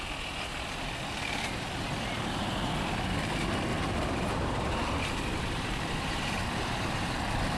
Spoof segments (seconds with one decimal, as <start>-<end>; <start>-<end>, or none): 3.7-7.1